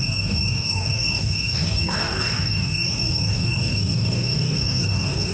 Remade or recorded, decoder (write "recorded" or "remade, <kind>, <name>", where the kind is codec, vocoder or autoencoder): remade, codec, DAC